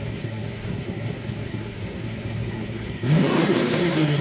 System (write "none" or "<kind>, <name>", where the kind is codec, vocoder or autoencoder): codec, SNAC